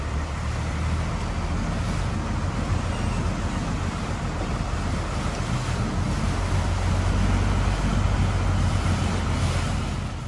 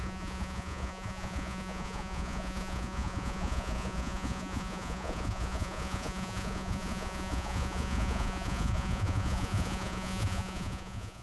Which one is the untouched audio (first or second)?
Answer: first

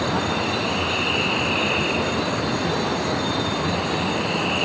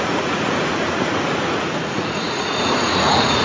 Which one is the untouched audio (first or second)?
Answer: first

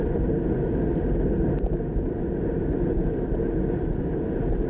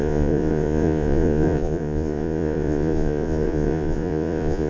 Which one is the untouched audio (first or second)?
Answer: first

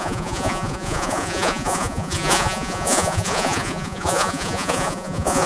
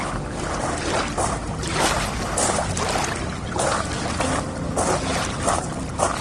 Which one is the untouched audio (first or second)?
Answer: second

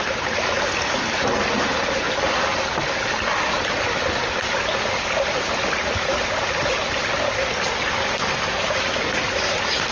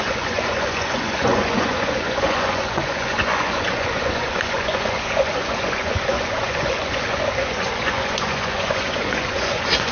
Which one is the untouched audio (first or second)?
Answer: first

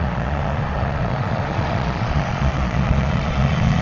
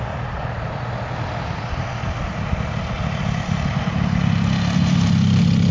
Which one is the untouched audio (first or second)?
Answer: second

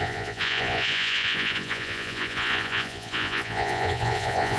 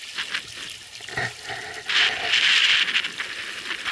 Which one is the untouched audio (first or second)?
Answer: second